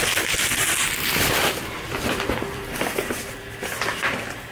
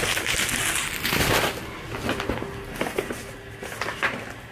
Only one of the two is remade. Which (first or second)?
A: first